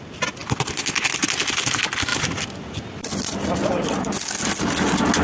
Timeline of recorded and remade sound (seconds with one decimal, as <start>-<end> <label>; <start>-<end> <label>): 0.0-5.2 recorded